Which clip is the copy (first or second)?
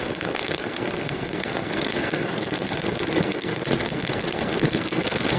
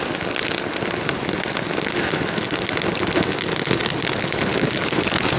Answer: first